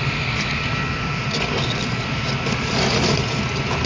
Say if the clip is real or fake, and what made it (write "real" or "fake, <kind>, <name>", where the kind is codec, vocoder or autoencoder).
real